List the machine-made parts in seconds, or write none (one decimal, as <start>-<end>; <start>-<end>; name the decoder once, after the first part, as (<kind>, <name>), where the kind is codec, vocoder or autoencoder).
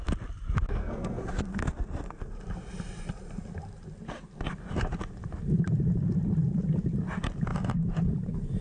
0.8-2.3 (codec, SNAC)